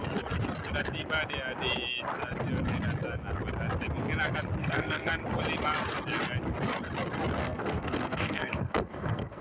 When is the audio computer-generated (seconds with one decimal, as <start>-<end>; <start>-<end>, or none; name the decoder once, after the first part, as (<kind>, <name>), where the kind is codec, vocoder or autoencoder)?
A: 4.6-5.1 (codec, SNAC); 7.4-9.4